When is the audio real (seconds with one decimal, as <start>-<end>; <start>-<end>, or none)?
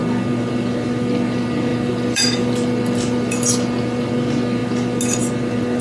0.0-1.7; 4.1-5.8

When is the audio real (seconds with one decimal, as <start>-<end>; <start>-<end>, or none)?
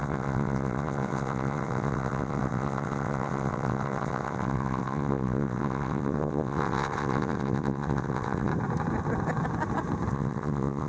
8.5-10.1